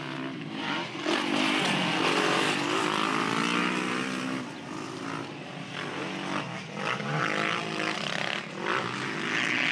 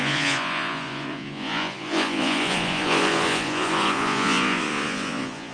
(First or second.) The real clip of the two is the first